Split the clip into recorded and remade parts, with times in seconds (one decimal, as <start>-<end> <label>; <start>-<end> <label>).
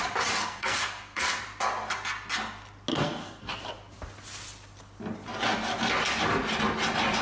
0.0-0.4 recorded; 0.4-1.4 remade; 1.4-2.9 recorded; 2.9-3.5 remade; 3.5-7.2 recorded